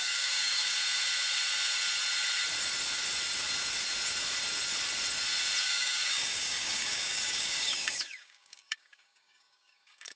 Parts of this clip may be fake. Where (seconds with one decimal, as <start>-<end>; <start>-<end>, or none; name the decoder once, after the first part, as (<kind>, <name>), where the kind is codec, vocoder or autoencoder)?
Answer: 0.0-0.8 (codec, DAC); 5.6-10.2